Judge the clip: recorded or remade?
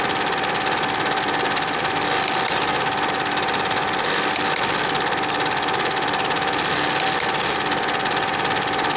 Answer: recorded